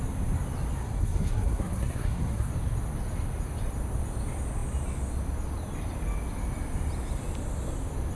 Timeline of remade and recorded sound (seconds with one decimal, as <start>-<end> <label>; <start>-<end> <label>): 0.0-0.8 recorded; 0.8-2.5 remade; 2.5-8.2 recorded